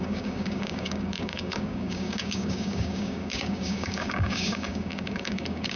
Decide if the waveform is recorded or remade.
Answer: remade